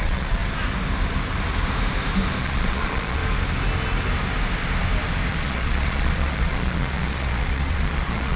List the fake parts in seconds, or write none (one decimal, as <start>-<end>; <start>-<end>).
0.0-0.4; 2.4-3.2; 5.3-8.4